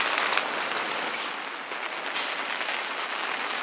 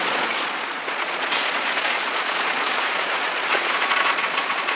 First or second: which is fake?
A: second